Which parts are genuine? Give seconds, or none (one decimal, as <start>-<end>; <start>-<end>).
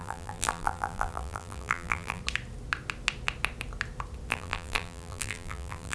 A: 2.2-4.3